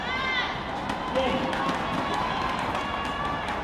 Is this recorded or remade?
recorded